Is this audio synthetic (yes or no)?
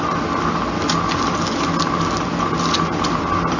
no